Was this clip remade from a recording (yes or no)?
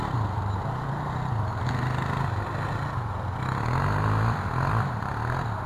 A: no